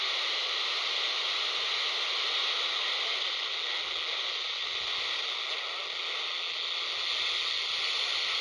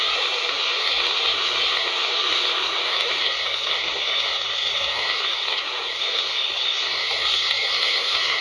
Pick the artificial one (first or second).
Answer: second